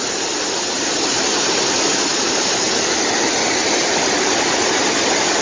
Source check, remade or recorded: recorded